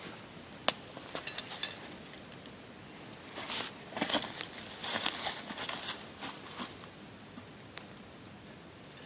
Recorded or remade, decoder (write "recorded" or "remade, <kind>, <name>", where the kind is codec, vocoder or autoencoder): recorded